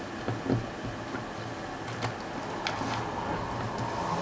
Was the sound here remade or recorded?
recorded